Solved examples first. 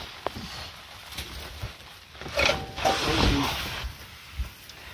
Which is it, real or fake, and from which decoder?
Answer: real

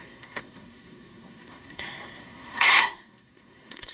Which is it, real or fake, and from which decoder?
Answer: fake, codec, SNAC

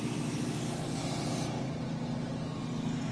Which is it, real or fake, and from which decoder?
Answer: real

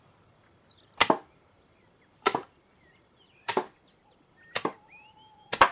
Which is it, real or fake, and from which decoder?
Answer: fake, vocoder, BigVGAN v2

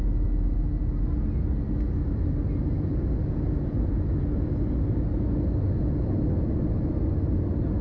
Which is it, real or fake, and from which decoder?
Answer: real